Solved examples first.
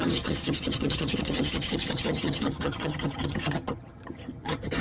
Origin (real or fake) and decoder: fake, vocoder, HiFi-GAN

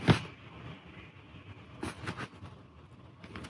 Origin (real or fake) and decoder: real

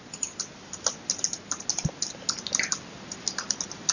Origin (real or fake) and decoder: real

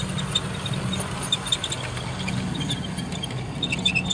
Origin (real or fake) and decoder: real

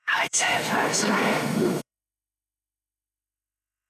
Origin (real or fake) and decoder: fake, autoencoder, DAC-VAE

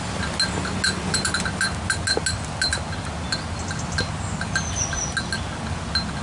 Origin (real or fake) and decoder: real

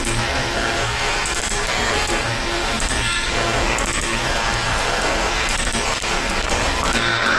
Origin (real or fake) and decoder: fake, codec, SNAC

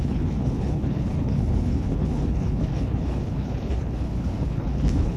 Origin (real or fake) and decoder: fake, codec, HILCodec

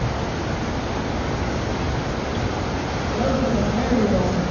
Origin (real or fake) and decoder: real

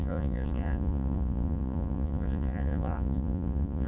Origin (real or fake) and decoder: fake, vocoder, Vocos